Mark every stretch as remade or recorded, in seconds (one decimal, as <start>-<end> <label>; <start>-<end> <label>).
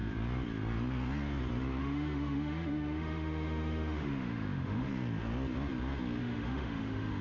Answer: 0.0-1.8 recorded; 1.8-4.9 remade; 4.9-6.2 recorded; 6.2-7.2 remade